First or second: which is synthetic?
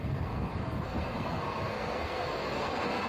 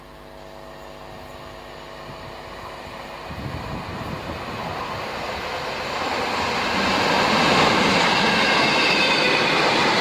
first